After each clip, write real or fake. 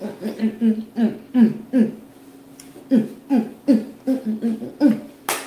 real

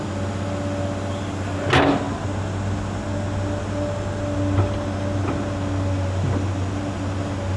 real